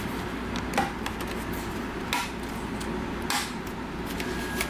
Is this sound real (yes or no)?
yes